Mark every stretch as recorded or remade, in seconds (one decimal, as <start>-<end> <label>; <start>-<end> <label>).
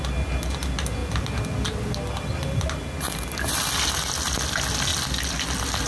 0.0-5.9 recorded